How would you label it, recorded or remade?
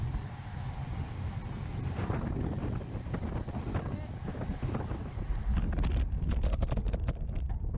recorded